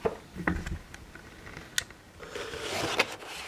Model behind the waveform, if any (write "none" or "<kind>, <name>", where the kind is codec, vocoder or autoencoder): none